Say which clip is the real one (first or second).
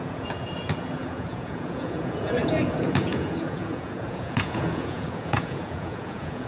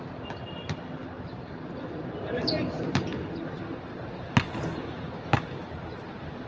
second